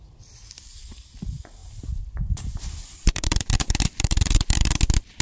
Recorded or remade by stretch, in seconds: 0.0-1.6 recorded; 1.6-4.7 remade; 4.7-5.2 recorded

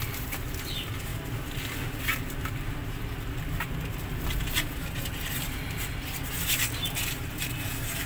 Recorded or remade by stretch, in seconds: 0.0-8.1 recorded